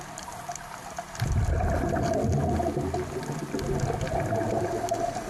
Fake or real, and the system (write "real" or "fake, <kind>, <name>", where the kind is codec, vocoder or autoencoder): real